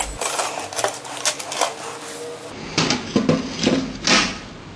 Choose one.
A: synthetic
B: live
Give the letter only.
B